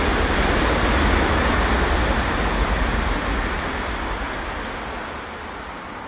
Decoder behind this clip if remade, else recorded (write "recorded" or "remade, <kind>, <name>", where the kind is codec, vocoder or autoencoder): recorded